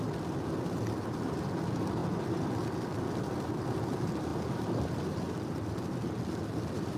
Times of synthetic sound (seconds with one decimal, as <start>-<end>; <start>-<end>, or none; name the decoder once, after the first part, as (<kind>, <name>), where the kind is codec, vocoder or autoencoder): 2.0-3.0 (vocoder, BigVGAN v2)